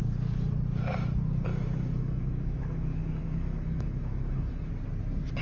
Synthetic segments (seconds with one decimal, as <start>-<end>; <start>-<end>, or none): 1.5-4.7